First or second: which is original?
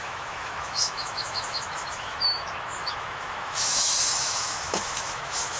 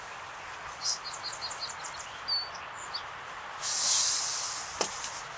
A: second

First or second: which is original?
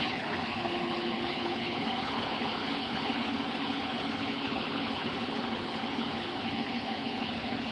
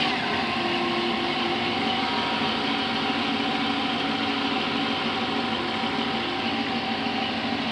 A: second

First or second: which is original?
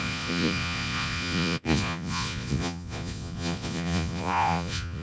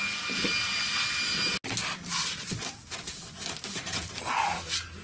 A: second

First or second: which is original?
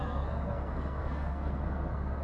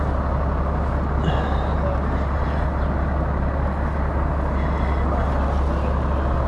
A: second